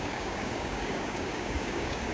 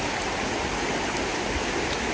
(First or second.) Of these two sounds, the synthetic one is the first